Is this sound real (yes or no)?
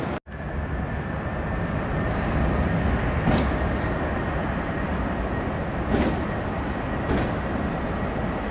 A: yes